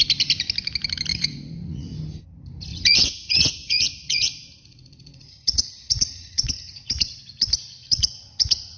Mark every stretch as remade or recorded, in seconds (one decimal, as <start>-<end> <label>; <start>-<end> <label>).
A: 0.0-1.1 recorded; 1.1-2.0 remade; 2.0-2.7 recorded; 2.7-7.2 remade; 7.2-7.8 recorded; 7.8-8.8 remade